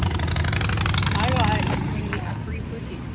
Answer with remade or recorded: recorded